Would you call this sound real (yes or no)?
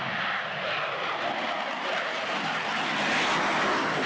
yes